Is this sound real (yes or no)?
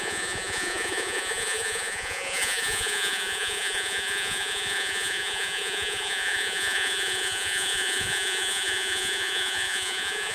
no